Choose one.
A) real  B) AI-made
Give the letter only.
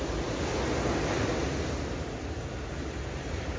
A